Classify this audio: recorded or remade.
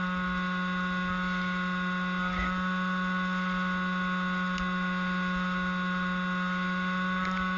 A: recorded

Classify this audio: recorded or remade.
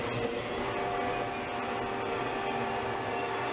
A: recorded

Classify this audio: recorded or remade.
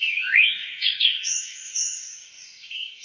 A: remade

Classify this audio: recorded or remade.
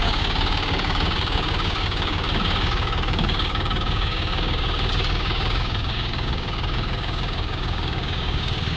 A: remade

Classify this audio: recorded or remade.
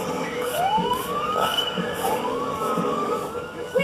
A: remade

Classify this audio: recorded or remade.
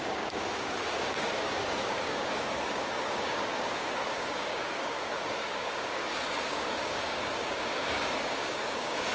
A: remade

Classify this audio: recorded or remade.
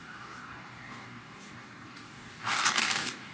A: remade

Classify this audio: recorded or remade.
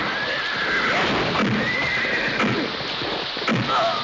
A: recorded